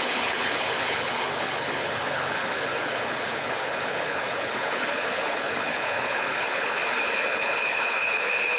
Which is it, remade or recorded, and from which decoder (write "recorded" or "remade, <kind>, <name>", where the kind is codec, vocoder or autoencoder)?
remade, codec, HILCodec